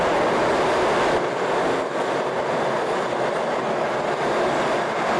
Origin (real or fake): real